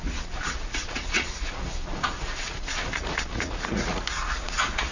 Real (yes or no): no